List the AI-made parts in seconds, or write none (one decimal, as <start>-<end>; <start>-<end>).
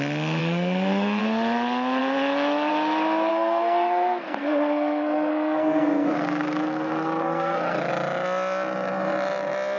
0.4-1.2; 3.3-7.9